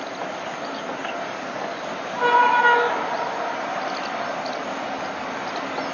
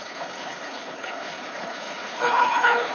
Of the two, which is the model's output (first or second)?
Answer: second